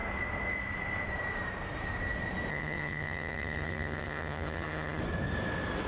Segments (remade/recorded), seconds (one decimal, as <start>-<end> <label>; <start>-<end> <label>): 0.0-2.5 recorded; 2.5-5.0 remade; 5.0-5.9 recorded